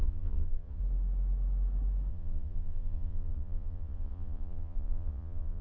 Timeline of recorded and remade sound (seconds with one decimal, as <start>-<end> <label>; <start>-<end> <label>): 0.0-0.8 remade; 0.8-2.1 recorded; 2.1-5.6 remade